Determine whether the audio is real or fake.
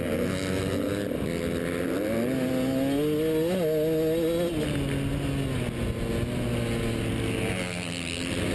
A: real